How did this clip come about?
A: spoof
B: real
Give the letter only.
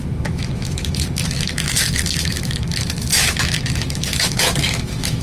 A